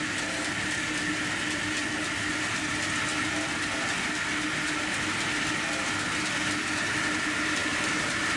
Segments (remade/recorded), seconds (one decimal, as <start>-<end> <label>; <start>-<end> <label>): 0.0-7.6 recorded; 7.6-8.4 remade